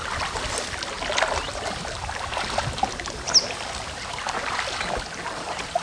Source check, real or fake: real